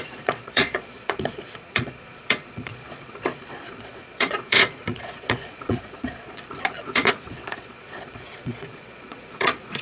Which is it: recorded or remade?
remade